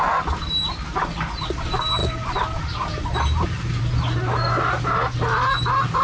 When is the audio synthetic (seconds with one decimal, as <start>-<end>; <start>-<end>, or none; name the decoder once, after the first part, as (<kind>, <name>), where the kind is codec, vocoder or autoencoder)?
none